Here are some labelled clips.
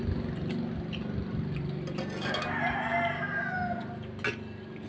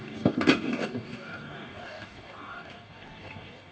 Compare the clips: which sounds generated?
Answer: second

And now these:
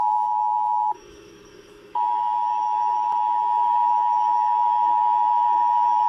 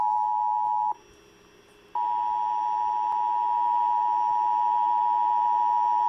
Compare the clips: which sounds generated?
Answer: first